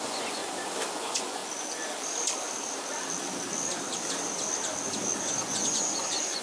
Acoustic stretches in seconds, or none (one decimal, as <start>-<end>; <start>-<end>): 0.4-0.9; 1.4-5.2